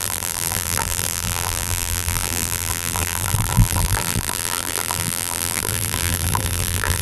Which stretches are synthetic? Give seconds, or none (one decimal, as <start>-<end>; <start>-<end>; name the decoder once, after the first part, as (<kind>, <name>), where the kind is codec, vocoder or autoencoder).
0.0-7.0 (vocoder, BigVGAN v2)